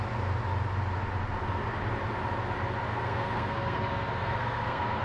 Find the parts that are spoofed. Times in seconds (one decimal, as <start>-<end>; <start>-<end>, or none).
2.9-5.0